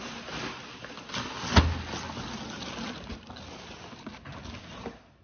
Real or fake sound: real